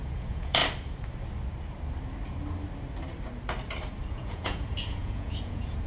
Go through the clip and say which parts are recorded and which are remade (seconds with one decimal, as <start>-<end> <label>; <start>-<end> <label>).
0.0-0.6 remade; 0.6-4.1 recorded; 4.1-5.9 remade